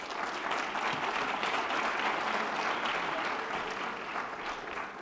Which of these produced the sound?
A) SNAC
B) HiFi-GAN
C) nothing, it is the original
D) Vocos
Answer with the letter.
C